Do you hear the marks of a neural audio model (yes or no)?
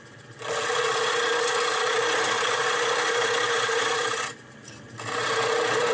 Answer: no